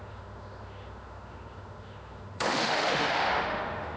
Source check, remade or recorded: remade